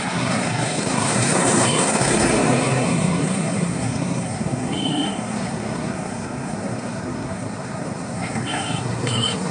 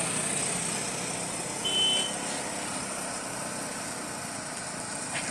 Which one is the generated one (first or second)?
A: first